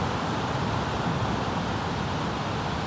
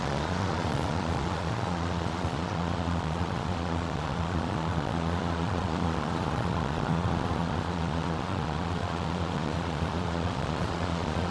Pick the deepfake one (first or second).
second